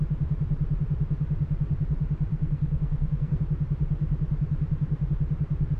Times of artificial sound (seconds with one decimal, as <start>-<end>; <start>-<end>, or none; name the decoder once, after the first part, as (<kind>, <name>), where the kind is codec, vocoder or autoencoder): 2.3-3.4 (codec, SNAC)